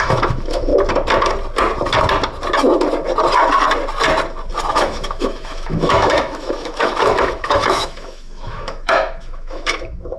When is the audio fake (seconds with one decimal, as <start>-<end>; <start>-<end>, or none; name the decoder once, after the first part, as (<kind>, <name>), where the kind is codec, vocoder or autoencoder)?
0.0-0.7 (autoencoder, DAC-VAE); 4.7-10.2

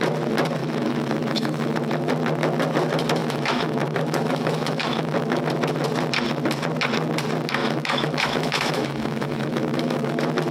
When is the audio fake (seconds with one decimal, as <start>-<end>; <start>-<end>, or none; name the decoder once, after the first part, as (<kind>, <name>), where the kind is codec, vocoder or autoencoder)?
0.6-1.7 (autoencoder, DAC-VAE); 3.2-5.4; 7.6-10.1

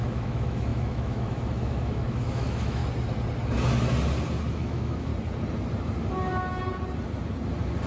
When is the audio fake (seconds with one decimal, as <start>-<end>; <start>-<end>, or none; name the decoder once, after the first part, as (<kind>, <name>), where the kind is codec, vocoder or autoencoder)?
0.0-2.8 (autoencoder, DAC-VAE); 4.5-5.1

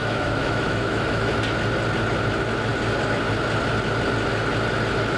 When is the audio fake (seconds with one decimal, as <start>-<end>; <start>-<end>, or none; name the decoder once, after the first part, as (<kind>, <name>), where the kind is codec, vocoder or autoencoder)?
0.0-1.3 (autoencoder, DAC-VAE)

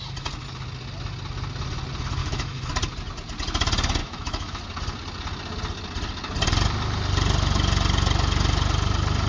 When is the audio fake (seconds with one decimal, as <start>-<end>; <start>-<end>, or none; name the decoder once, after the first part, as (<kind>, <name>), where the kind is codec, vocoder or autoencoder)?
2.2-2.7 (autoencoder, DAC-VAE); 4.0-4.6

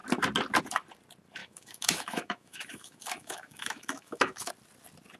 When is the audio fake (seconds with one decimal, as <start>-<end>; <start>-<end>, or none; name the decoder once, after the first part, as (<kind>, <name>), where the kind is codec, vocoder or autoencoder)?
1.4-4.5 (autoencoder, DAC-VAE)

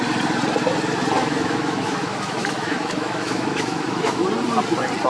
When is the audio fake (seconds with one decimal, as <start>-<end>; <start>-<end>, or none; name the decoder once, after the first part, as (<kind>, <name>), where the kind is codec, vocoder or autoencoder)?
1.2-4.3 (autoencoder, DAC-VAE)